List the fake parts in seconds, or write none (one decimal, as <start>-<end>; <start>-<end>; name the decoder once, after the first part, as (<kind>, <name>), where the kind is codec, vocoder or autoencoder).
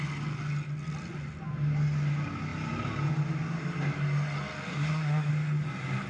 4.7-5.3 (codec, SNAC)